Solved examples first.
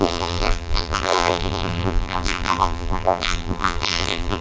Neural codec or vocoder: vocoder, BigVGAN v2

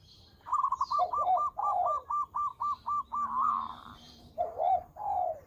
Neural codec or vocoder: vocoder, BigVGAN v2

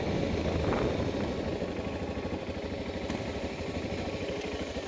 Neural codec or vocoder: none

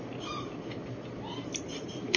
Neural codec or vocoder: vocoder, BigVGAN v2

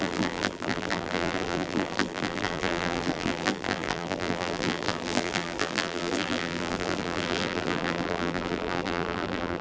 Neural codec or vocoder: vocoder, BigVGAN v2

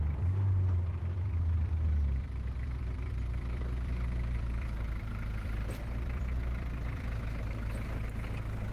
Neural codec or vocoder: vocoder, BigVGAN v2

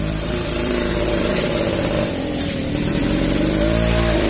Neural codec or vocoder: vocoder, BigVGAN v2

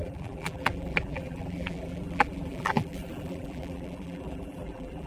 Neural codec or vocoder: vocoder, BigVGAN v2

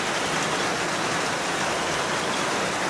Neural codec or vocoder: none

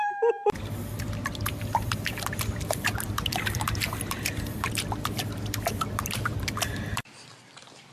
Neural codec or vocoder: vocoder, BigVGAN v2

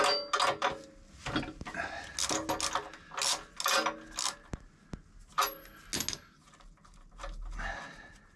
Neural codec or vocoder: none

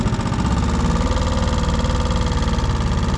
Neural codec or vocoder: none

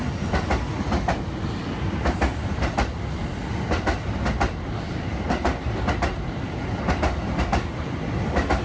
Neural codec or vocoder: none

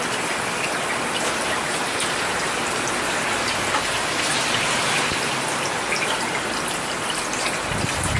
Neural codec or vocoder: vocoder, BigVGAN v2